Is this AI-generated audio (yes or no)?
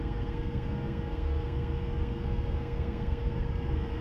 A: yes